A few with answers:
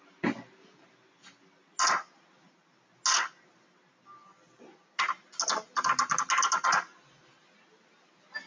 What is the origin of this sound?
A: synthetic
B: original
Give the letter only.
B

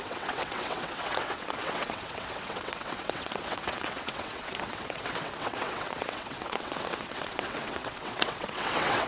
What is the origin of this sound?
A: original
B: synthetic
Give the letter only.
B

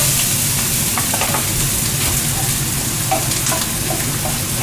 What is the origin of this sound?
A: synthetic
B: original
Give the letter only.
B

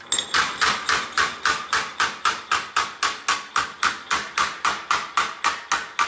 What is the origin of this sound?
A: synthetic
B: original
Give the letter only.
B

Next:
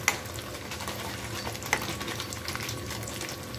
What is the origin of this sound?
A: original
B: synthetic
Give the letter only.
A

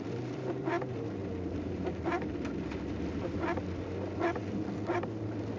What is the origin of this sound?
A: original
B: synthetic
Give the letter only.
B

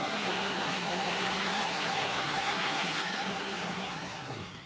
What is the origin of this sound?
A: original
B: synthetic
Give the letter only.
B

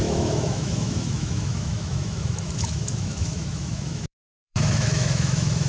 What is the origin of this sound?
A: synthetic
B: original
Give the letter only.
A